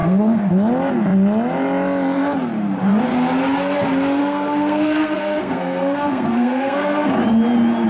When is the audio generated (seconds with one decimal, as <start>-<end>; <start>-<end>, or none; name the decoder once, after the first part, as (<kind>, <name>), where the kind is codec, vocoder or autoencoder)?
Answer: 0.0-0.5 (codec, SNAC); 4.2-7.1

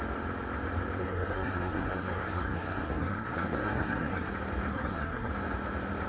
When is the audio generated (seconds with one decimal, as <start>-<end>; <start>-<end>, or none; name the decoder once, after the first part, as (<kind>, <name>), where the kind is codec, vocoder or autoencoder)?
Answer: 1.0-4.3 (codec, SNAC); 4.7-5.3

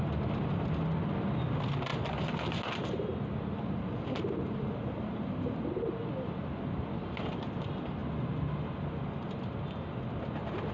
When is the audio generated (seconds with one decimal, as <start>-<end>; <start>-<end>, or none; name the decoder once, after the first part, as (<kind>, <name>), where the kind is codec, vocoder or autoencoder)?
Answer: none

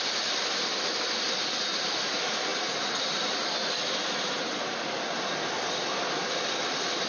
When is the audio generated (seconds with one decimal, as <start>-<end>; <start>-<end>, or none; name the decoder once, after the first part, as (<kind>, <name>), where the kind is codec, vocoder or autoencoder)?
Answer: none

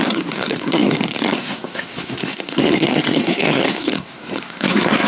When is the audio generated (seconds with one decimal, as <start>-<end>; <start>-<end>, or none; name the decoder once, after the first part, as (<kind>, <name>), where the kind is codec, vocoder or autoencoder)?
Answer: 0.0-5.1 (codec, SNAC)

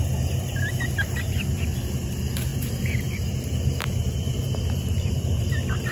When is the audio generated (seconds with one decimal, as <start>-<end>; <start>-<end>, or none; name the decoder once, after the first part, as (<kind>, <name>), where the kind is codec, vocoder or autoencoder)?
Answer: 2.5-5.5 (vocoder, BigVGAN v2)

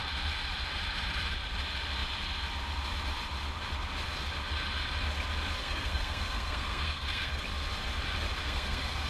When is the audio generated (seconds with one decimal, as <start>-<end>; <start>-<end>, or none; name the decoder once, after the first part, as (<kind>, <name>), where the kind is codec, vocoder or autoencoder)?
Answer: 5.6-7.4 (codec, SNAC); 8.4-9.1

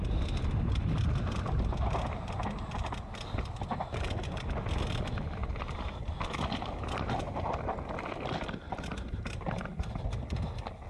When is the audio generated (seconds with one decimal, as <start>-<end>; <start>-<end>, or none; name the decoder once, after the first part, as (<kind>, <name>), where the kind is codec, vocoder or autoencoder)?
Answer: none